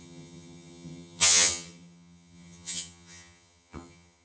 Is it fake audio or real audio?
fake